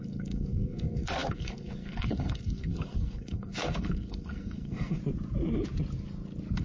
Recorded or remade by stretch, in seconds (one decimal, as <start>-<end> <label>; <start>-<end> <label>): 0.0-5.0 remade; 5.0-6.6 recorded